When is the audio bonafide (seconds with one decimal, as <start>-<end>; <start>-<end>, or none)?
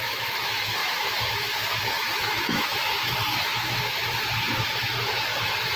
none